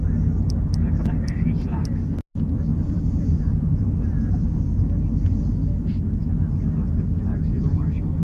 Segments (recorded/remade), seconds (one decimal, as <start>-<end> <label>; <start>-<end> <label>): 0.0-2.7 recorded; 2.7-4.6 remade; 4.6-8.2 recorded